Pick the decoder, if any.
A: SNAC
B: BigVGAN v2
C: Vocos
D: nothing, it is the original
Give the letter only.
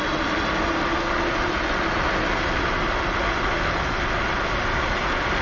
D